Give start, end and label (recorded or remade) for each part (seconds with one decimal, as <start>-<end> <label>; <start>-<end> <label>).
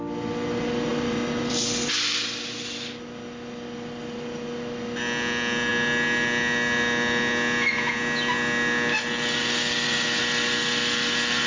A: 0.0-11.5 recorded